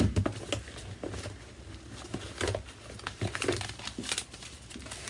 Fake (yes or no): no